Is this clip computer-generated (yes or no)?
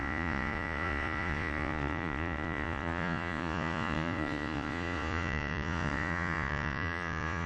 yes